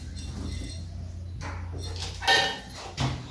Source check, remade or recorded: recorded